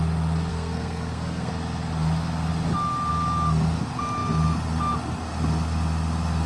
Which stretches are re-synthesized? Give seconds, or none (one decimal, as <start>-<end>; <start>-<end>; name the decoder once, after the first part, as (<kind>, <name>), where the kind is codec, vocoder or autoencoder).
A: 0.5-1.5 (codec, SNAC)